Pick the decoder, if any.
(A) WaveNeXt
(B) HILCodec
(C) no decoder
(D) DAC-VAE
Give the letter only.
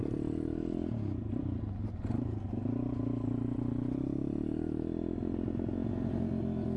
C